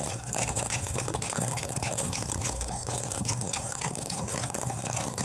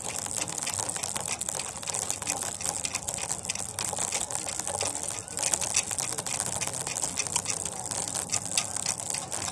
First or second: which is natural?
second